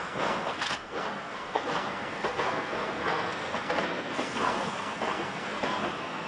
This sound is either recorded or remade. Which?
remade